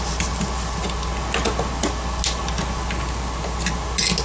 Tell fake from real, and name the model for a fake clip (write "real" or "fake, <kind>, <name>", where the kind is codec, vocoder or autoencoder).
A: real